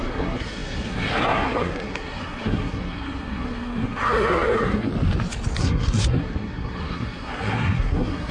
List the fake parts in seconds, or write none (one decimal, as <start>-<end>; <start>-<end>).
0.0-4.9; 5.6-8.3